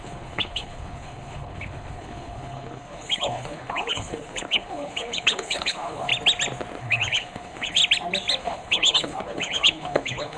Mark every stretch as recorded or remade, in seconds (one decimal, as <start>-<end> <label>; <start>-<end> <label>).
0.0-6.1 remade; 6.1-6.8 recorded; 6.8-7.8 remade; 7.8-8.4 recorded; 8.4-10.4 remade